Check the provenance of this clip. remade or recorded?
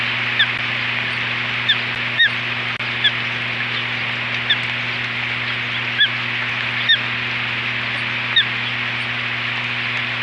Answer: recorded